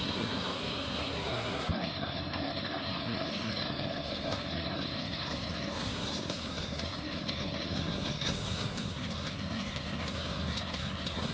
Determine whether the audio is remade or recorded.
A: remade